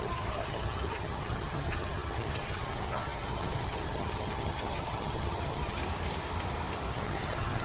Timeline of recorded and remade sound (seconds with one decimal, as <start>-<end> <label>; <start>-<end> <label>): 0.0-5.8 remade; 5.8-6.9 recorded; 6.9-7.6 remade